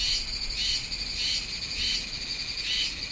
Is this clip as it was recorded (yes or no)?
yes